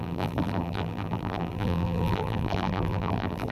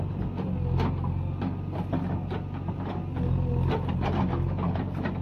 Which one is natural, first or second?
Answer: second